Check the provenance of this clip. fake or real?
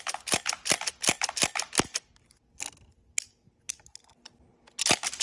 real